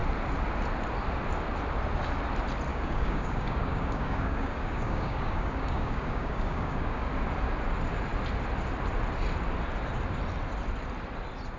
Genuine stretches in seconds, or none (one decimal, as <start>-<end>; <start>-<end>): 0.0-2.7; 7.1-11.6

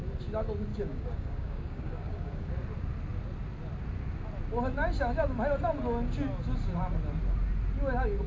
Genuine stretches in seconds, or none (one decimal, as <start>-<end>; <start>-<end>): 0.0-0.7; 2.5-8.3